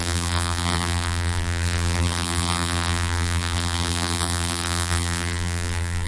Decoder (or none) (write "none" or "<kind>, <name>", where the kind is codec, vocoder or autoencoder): vocoder, BigVGAN v2